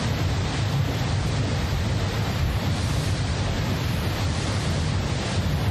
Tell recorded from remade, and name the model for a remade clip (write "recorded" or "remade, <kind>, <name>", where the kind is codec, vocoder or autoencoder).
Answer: recorded